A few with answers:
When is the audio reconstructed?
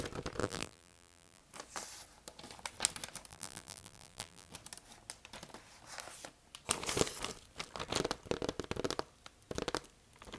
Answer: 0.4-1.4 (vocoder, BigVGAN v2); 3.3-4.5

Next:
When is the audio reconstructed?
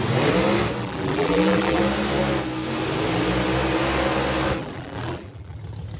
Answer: 0.8-1.8 (vocoder, BigVGAN v2); 4.6-5.6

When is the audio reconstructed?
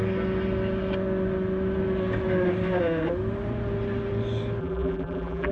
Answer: 4.6-5.5 (vocoder, BigVGAN v2)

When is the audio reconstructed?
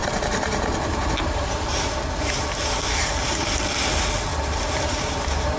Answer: 0.0-3.4 (vocoder, BigVGAN v2); 4.3-5.6